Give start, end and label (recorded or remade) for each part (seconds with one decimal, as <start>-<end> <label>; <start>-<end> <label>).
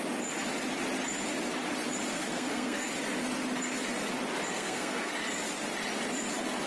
0.0-2.1 recorded; 2.1-2.9 remade; 2.9-4.5 recorded; 4.5-5.1 remade; 5.1-6.7 recorded